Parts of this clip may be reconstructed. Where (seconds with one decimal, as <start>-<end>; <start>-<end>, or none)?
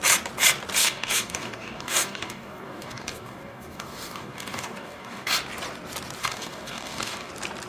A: 0.8-5.3; 6.2-7.3